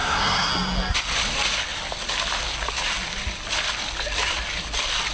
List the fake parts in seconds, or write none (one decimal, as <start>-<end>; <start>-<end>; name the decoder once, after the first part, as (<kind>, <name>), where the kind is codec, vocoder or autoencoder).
0.0-0.5 (codec, SNAC)